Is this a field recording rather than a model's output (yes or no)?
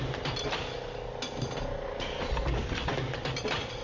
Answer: yes